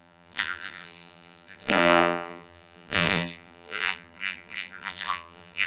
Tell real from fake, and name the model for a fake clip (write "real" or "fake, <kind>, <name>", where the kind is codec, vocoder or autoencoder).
fake, vocoder, BigVGAN v2